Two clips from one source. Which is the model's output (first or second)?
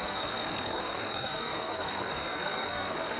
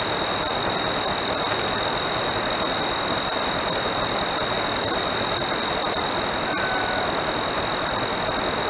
first